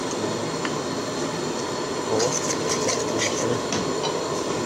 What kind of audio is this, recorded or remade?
recorded